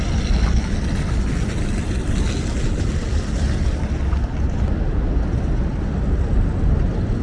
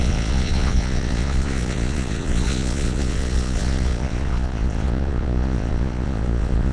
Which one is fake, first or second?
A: second